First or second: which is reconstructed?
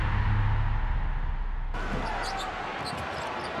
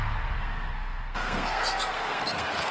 second